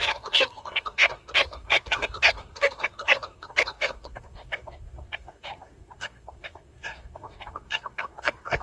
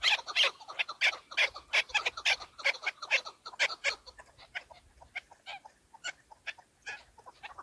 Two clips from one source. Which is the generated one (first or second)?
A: first